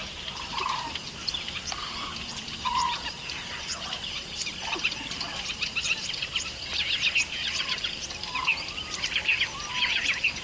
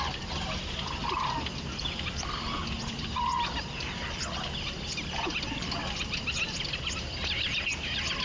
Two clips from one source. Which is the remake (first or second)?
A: first